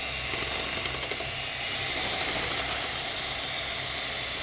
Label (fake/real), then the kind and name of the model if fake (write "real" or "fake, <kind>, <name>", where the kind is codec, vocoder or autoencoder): real